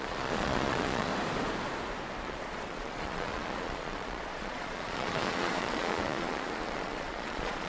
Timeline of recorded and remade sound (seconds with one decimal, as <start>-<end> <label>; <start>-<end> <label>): 0.0-1.1 remade; 1.1-2.2 recorded; 2.2-7.7 remade